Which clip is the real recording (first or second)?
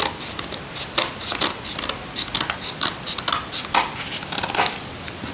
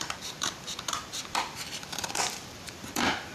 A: first